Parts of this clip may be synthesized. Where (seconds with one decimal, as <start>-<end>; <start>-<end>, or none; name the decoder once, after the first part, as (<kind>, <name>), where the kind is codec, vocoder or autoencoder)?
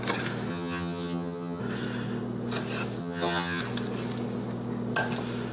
0.5-1.6 (vocoder, HiFi-GAN); 3.0-3.6